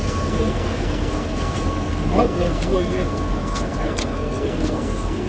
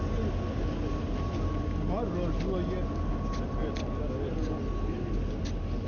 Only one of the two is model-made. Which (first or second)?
first